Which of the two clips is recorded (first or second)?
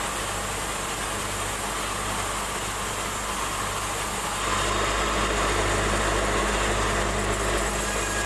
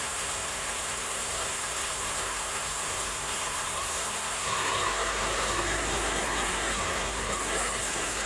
first